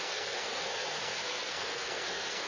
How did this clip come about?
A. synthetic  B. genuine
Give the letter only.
A